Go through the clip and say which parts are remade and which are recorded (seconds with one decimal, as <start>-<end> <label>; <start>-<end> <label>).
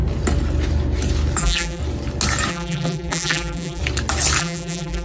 0.0-1.4 recorded; 1.4-1.8 remade; 1.8-2.5 recorded; 2.5-3.8 remade; 3.8-4.4 recorded; 4.4-5.0 remade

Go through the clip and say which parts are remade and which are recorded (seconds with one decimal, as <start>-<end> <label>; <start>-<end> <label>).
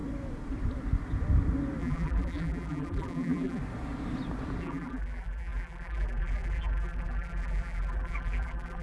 0.0-1.8 recorded; 1.8-3.6 remade; 3.6-4.6 recorded; 4.6-8.8 remade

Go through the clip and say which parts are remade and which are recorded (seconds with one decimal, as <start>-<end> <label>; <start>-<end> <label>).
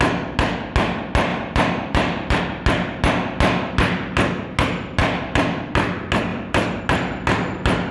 0.0-1.3 recorded; 1.3-2.4 remade; 2.4-5.0 recorded; 5.0-5.7 remade; 5.7-6.3 recorded; 6.3-6.8 remade; 6.8-7.9 recorded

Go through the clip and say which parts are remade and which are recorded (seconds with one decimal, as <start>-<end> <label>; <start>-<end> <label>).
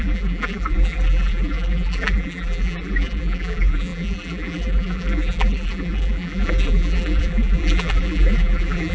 0.0-8.9 remade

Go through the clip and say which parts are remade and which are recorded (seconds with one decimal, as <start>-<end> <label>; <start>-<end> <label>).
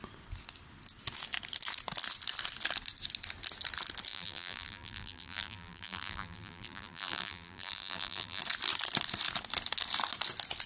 0.0-4.1 recorded; 4.1-8.4 remade; 8.4-10.7 recorded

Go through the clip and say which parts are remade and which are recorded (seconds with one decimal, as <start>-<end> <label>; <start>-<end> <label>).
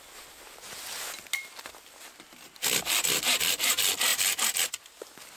0.0-5.4 recorded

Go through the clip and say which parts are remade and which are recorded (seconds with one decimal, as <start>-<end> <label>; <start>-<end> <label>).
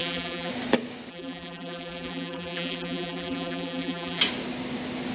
0.0-0.5 remade; 0.5-1.1 recorded; 1.1-4.2 remade; 4.2-5.1 recorded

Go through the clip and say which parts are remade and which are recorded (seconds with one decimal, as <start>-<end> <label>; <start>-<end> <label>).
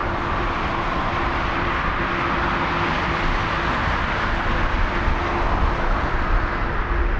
0.0-2.1 remade; 2.1-7.2 recorded